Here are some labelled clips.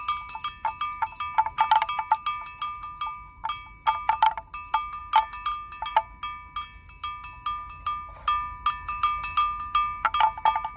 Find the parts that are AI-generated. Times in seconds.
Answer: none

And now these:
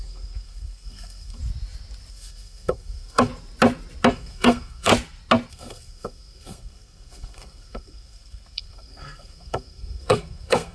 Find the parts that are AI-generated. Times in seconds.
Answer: 0.0-1.4 (codec, SNAC); 2.1-3.3; 4.1-4.9; 5.5-10.7

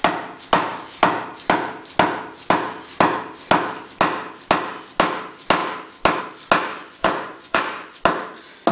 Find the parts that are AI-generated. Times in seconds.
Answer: 6.8-8.0 (vocoder, Vocos)

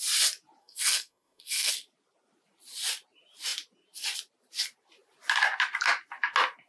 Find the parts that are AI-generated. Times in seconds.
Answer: 0.6-1.7 (codec, SNAC)

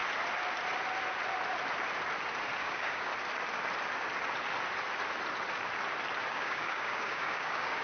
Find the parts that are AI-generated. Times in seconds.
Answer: 2.6-3.1 (codec, DAC); 6.3-7.8

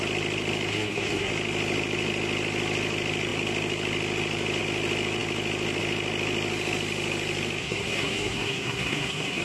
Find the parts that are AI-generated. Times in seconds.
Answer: 0.7-1.3 (codec, SNAC); 7.6-9.4

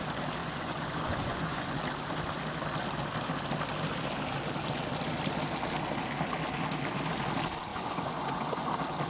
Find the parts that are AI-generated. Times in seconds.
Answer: 0.4-1.8 (vocoder, Vocos); 7.7-8.7